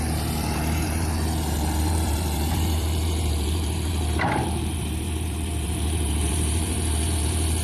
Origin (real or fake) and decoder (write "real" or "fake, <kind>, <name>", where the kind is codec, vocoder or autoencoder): fake, vocoder, BigVGAN v2